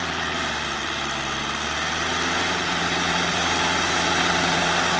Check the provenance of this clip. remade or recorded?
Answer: remade